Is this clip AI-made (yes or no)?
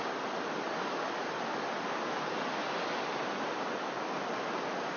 no